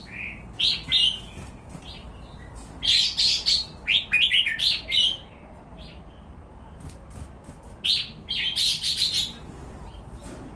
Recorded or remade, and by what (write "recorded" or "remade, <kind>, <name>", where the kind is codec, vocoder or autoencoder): recorded